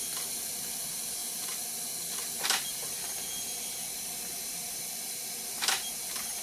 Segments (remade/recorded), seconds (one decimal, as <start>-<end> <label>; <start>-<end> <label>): 0.0-6.4 recorded